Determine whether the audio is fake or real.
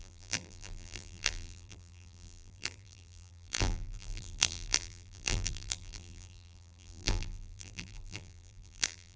fake